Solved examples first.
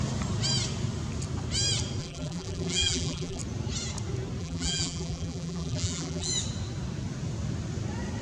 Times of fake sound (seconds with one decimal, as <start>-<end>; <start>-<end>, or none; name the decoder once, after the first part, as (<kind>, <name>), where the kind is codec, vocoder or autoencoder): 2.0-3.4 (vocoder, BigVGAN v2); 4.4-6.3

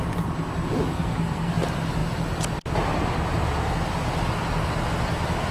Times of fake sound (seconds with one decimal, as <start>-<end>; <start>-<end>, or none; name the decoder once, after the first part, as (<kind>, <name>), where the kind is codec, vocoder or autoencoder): 0.9-1.5 (codec, SNAC)

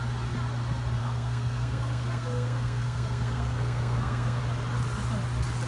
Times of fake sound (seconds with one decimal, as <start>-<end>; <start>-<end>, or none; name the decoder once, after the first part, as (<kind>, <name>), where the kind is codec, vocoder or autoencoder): 1.0-4.4 (codec, SNAC)

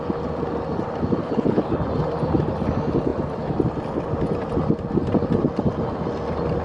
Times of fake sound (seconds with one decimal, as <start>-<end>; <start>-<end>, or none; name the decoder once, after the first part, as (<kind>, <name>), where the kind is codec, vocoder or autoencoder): 1.2-1.7 (codec, HILCodec)

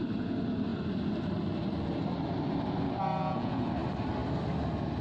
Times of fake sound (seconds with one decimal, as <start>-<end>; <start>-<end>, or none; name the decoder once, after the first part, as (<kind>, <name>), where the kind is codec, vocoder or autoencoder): 3.2-3.7 (vocoder, Vocos)

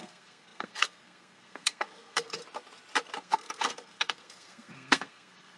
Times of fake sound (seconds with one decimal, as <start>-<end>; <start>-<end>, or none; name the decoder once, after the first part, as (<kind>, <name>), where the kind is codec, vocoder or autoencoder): 0.0-2.4 (codec, SNAC); 3.2-5.6

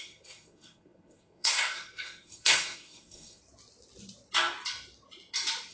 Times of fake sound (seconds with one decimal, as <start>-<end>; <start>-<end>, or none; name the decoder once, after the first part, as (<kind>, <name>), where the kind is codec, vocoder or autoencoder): 0.0-3.4 (codec, SNAC)

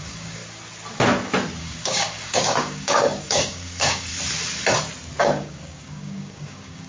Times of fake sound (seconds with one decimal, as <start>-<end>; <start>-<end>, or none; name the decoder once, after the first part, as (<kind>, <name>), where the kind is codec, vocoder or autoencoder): 0.0-0.4 (codec, DAC); 1.6-4.1; 5.2-6.9